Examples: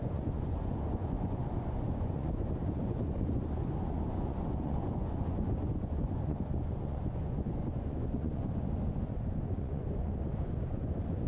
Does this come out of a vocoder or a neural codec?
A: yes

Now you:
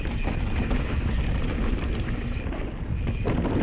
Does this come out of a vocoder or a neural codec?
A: no